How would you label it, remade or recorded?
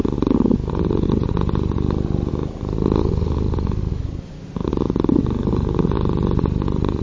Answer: recorded